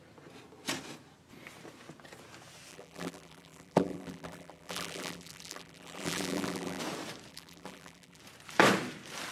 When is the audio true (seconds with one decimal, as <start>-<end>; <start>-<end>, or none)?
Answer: 0.0-2.7; 6.8-7.3; 8.2-9.3